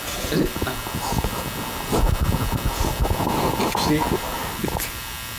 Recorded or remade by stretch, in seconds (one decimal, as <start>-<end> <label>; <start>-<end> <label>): 0.0-4.4 recorded; 4.4-5.0 remade; 5.0-5.4 recorded